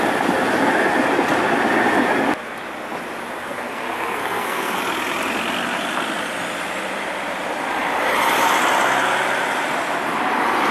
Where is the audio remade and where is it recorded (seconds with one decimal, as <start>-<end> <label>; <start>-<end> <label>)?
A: 0.0-3.4 recorded; 3.4-4.8 remade; 4.8-10.7 recorded